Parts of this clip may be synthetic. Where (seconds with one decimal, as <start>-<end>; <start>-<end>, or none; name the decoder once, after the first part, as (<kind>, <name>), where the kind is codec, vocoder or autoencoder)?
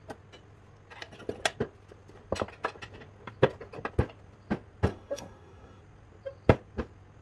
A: 4.9-5.8 (codec, SNAC)